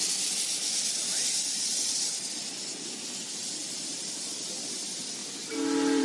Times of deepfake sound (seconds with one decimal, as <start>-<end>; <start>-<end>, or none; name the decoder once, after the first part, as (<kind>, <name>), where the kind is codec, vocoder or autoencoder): 0.0-0.5 (vocoder, BigVGAN v2); 1.0-2.7; 3.3-5.2

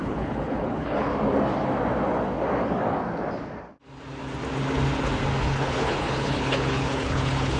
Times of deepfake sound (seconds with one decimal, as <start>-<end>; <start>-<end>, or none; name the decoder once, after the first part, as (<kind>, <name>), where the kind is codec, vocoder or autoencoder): 0.0-1.1 (codec, HILCodec); 5.4-7.6

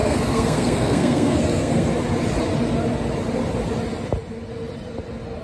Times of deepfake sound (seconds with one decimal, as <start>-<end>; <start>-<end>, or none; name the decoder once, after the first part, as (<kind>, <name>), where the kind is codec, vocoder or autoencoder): 0.0-1.9 (codec, SNAC)

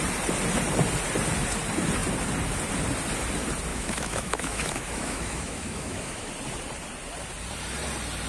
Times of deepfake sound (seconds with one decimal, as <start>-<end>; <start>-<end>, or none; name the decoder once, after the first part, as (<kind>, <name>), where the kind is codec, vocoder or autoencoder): 3.7-6.3 (autoencoder, DAC-VAE)

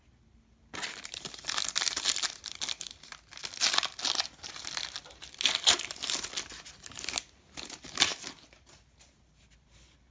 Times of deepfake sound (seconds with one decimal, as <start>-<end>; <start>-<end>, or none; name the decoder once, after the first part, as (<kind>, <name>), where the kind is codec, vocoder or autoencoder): none